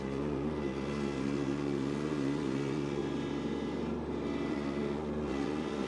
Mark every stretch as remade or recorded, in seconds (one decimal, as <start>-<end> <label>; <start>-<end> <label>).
0.0-3.0 remade; 3.0-4.5 recorded; 4.5-5.9 remade